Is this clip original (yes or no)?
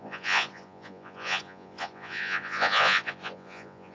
no